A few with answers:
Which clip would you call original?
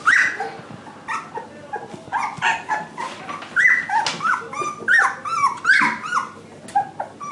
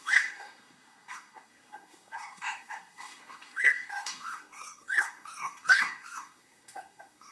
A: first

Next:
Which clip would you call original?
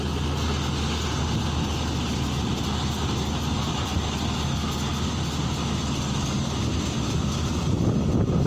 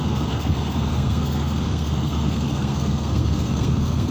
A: first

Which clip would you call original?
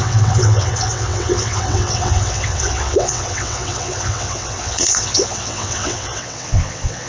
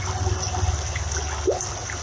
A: second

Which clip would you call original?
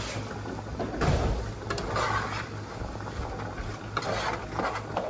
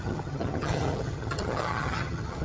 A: first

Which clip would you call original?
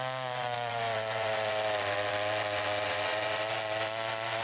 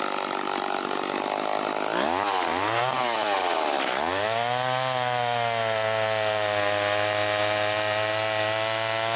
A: second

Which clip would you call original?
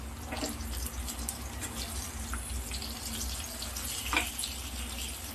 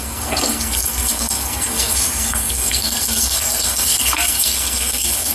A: first